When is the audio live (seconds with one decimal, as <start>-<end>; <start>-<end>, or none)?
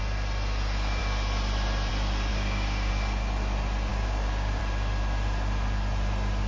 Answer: 0.0-2.3; 2.9-3.9; 4.6-6.5